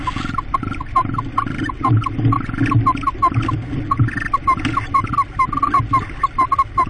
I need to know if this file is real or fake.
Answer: real